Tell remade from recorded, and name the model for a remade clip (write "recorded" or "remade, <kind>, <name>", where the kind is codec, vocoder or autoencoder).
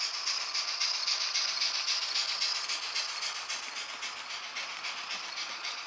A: recorded